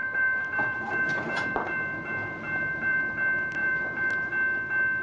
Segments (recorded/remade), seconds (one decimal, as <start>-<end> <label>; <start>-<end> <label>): 0.0-3.0 remade; 3.0-3.6 recorded; 3.6-4.3 remade; 4.3-5.0 recorded